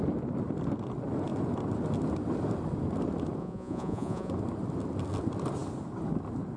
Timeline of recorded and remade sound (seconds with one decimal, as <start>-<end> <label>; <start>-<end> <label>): 0.0-3.4 recorded; 3.4-4.3 remade; 4.3-6.6 recorded